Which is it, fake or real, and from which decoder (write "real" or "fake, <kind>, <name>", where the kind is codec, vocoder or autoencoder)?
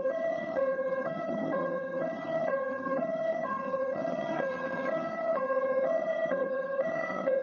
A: fake, vocoder, HiFi-GAN